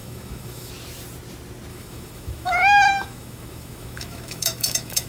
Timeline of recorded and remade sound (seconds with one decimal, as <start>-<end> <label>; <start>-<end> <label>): 0.0-0.7 remade; 0.7-1.7 recorded; 1.7-5.1 remade

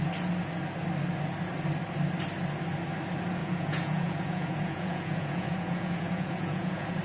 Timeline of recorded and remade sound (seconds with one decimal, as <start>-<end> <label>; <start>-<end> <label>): 0.0-3.4 recorded; 3.4-7.0 remade

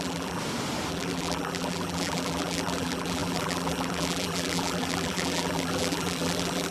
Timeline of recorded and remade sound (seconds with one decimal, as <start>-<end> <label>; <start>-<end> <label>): 0.0-0.4 remade; 0.4-0.9 recorded; 0.9-6.7 remade

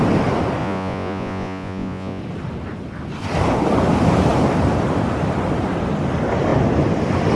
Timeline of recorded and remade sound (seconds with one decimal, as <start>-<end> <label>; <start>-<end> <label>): 0.0-0.6 recorded; 0.6-2.2 remade; 2.2-7.4 recorded

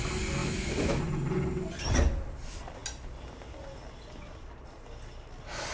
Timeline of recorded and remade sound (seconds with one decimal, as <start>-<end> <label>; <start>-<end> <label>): 0.0-0.4 recorded; 0.4-1.0 remade; 1.0-5.7 recorded

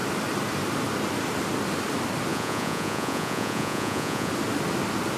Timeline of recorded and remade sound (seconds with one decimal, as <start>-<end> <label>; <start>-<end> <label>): 0.0-2.3 recorded; 2.3-4.3 remade; 4.3-5.2 recorded

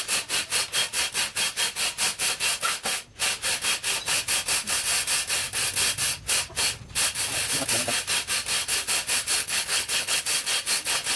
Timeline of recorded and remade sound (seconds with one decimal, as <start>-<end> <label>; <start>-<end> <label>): 0.0-9.4 recorded; 9.4-10.2 remade; 10.2-11.2 recorded